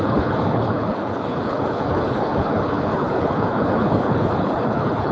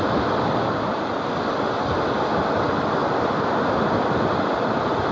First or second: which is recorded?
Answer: second